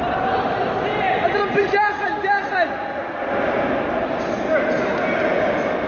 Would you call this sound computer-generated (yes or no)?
no